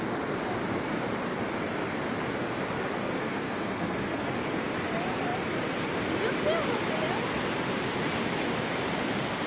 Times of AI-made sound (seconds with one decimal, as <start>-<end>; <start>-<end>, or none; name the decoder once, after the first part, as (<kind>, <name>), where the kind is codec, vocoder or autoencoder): 3.0-4.3 (codec, SNAC)